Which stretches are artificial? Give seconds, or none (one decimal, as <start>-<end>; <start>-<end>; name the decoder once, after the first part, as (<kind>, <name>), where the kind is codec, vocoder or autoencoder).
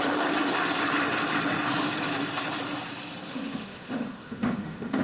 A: 3.3-5.0 (autoencoder, DAC-VAE)